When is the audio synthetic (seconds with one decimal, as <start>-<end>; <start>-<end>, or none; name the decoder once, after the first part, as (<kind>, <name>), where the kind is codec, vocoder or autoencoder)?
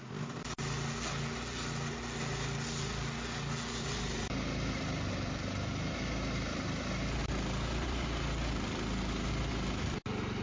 7.2-9.3 (vocoder, BigVGAN v2)